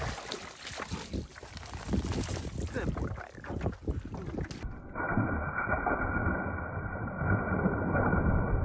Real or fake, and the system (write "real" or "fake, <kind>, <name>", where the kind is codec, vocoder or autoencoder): real